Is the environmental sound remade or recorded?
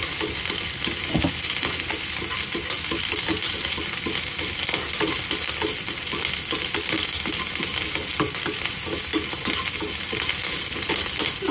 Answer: recorded